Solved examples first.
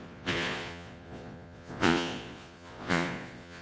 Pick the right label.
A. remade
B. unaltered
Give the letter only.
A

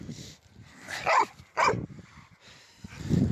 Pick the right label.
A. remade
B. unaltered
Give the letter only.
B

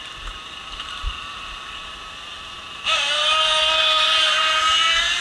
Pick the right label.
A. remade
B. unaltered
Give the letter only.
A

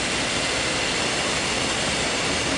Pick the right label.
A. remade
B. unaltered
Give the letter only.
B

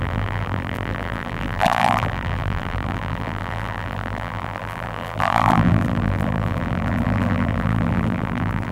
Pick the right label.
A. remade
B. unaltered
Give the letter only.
A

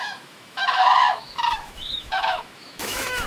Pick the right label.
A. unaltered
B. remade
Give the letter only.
B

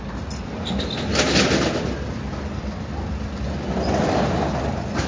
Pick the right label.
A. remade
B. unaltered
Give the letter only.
B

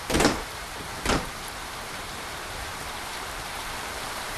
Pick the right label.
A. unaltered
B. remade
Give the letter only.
B